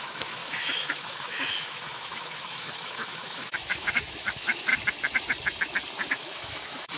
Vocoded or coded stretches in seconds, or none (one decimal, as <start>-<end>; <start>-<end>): 0.0-4.7; 6.1-7.0